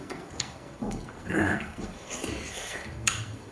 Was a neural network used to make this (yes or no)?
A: yes